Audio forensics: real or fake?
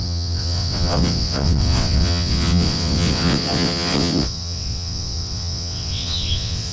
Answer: fake